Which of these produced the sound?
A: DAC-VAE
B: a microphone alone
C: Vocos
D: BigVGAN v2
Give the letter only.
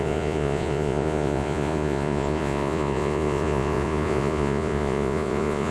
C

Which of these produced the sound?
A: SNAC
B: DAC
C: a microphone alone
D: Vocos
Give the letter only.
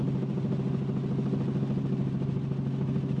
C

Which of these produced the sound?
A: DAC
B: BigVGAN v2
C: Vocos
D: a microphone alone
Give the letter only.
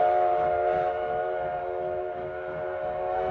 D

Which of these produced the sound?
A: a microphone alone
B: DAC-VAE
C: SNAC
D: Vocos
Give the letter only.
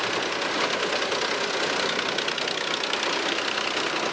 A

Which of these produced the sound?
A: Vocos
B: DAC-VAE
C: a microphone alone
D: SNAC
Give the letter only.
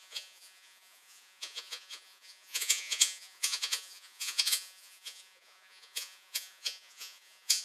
A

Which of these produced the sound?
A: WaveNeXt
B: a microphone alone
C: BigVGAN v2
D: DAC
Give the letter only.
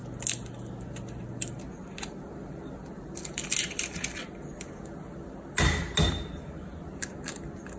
B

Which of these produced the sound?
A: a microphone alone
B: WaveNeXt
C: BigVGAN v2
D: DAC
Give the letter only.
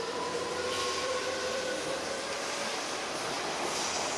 C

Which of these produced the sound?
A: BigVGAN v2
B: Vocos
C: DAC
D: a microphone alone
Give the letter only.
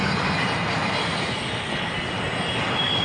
D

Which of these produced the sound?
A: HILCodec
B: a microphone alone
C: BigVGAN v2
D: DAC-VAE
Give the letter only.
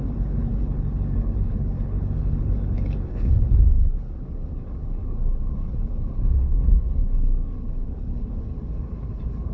A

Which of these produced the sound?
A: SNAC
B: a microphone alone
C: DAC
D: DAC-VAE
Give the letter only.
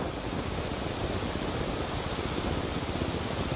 B